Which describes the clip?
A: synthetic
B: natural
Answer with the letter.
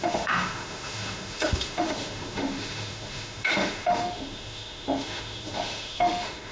A